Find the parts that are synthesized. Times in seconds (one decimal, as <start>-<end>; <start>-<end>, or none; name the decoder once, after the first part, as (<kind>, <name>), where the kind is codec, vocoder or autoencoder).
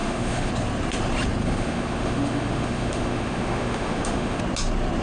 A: 0.0-0.5 (autoencoder, DAC-VAE); 1.4-4.4